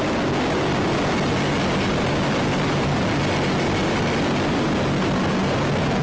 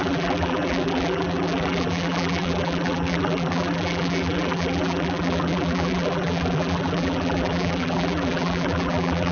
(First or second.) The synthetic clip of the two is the second